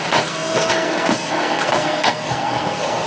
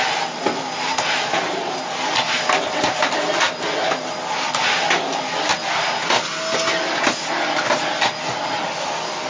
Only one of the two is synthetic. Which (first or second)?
first